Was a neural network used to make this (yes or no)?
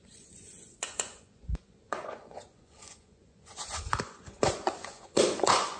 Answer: yes